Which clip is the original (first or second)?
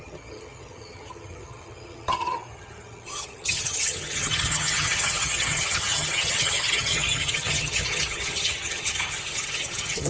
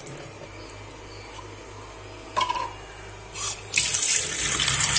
second